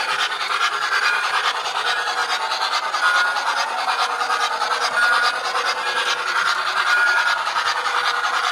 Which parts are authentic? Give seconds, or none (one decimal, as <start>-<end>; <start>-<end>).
2.2-6.3